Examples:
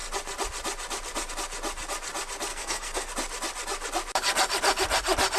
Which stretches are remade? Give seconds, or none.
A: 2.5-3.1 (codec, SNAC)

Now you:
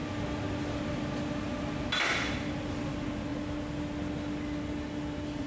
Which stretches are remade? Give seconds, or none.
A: none

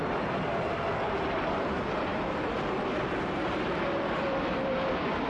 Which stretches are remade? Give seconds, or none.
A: 2.1-5.3 (vocoder, BigVGAN v2)

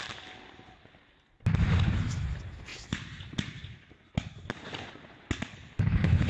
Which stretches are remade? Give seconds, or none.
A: 5.5-6.3 (codec, HILCodec)

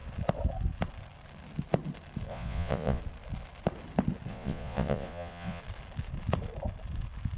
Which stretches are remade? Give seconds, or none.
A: 2.3-3.0 (vocoder, Vocos); 4.3-5.6

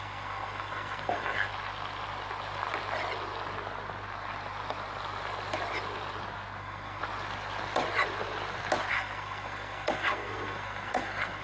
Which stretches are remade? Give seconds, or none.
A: 0.0-1.5 (codec, SNAC); 6.6-7.0; 8.9-11.4

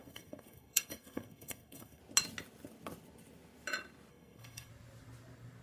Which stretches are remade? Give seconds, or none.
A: 0.0-2.0 (codec, SNAC); 4.1-4.7

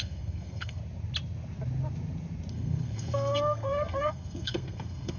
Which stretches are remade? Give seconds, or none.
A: 0.0-0.8 (codec, SNAC); 2.5-5.2